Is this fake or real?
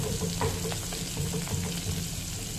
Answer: real